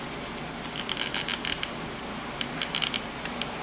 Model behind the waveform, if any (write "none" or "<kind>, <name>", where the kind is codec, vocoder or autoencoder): none